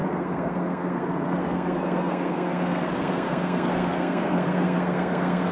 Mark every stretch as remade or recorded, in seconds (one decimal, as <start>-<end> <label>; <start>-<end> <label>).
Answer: 0.0-5.5 remade